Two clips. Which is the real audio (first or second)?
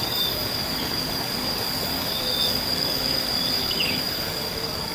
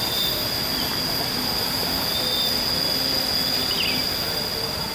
second